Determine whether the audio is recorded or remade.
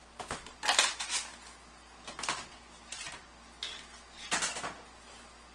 recorded